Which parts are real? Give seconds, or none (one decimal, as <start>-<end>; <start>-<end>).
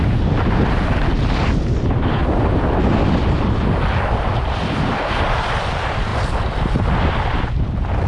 0.0-8.1